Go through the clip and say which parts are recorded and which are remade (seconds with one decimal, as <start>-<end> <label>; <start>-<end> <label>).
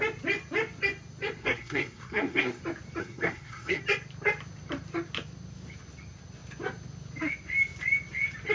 0.0-1.4 recorded; 1.4-2.6 remade; 2.6-3.0 recorded; 3.0-3.8 remade; 3.8-8.5 recorded